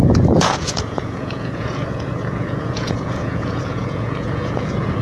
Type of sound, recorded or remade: remade